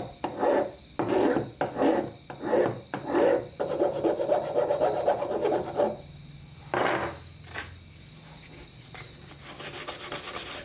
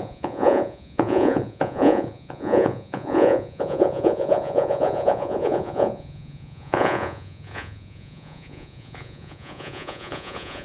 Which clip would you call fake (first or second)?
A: second